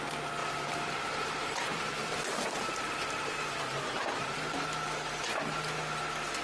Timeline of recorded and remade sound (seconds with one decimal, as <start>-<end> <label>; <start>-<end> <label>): 0.0-0.4 recorded; 0.4-4.2 remade; 4.2-6.4 recorded